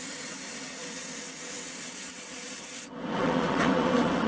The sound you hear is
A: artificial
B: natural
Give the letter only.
A